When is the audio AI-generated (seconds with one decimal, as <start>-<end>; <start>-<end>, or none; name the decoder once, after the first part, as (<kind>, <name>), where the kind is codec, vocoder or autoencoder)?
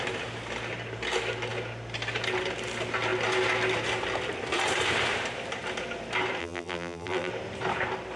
6.4-7.3 (vocoder, BigVGAN v2)